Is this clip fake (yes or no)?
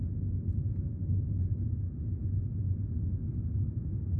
no